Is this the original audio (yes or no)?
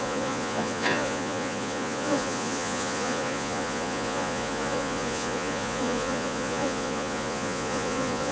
no